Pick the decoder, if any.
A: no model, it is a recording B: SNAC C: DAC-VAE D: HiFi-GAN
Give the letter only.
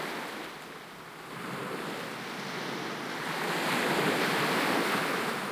A